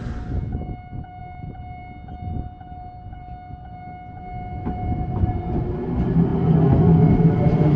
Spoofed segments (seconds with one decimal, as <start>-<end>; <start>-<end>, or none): none